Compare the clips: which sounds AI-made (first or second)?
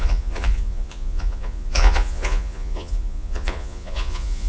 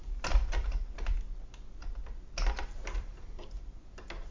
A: first